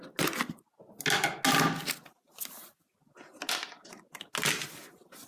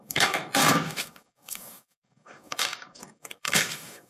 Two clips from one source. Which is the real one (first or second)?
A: first